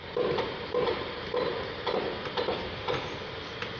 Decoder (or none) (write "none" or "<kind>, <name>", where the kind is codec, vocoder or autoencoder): vocoder, BigVGAN v2